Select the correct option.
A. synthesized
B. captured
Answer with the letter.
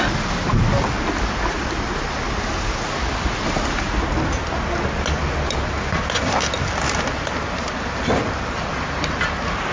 B